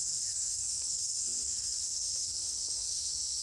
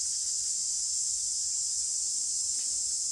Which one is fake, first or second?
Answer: first